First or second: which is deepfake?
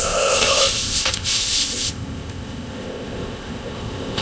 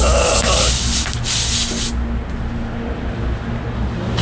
first